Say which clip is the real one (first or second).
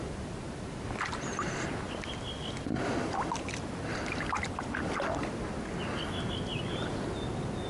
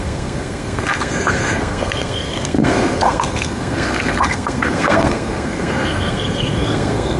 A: first